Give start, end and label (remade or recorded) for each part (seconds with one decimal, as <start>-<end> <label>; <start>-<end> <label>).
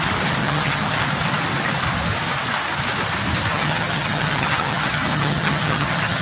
0.0-0.4 recorded; 0.4-1.0 remade; 1.0-3.5 recorded; 3.5-6.2 remade